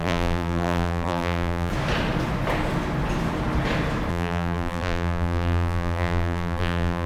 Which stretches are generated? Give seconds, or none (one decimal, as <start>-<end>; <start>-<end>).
0.0-1.7; 4.1-7.1

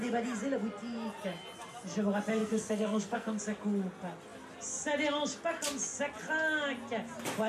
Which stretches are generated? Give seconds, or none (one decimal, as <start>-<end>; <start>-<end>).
2.4-3.4

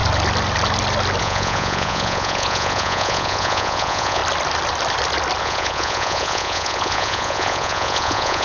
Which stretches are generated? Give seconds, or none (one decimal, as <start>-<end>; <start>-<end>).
1.2-4.2; 5.4-8.4

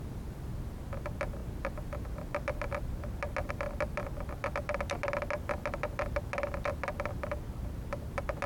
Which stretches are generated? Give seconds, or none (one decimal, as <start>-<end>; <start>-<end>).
none

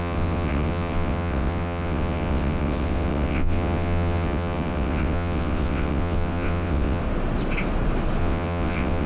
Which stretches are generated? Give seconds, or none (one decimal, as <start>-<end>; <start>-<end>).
0.0-7.0; 8.2-9.1

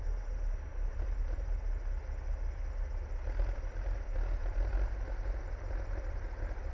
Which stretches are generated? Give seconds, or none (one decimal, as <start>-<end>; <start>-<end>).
none

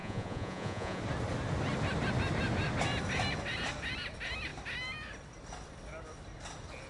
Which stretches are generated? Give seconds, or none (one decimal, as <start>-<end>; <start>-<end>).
0.0-1.0

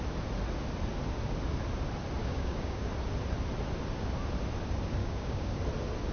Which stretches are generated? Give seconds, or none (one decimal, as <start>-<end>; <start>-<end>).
2.2-2.9; 5.0-5.6